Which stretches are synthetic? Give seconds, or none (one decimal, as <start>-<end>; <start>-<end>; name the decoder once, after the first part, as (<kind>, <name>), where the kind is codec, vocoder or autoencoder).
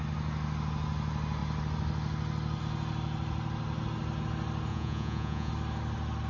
4.7-5.5 (vocoder, Vocos)